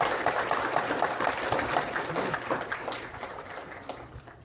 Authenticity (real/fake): real